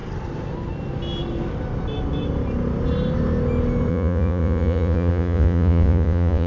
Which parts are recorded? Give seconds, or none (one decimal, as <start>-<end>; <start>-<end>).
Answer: 0.0-3.9